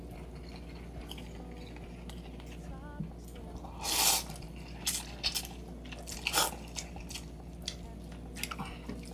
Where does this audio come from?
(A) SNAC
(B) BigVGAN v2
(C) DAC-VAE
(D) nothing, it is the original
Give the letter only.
D